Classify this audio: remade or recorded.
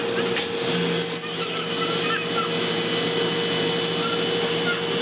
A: recorded